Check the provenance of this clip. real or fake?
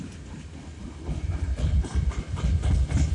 real